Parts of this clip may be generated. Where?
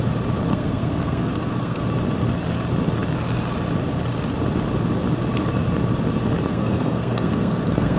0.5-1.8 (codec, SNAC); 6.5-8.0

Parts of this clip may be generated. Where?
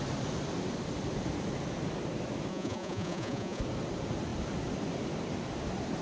2.5-3.6 (vocoder, Vocos)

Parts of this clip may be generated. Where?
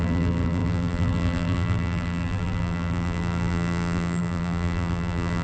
0.0-5.4 (vocoder, BigVGAN v2)